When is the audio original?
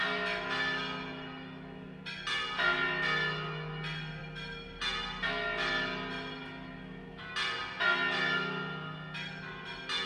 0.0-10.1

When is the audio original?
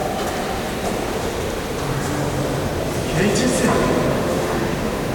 0.0-4.1